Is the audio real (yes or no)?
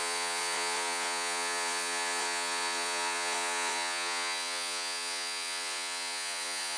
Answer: no